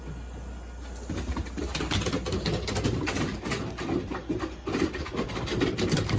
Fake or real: real